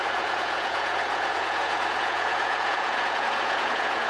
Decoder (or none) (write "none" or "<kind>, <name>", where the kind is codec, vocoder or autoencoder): vocoder, Vocos